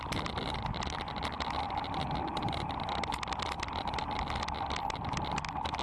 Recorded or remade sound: recorded